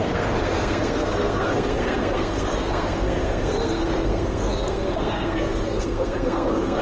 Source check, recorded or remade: remade